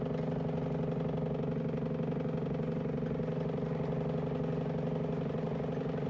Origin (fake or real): real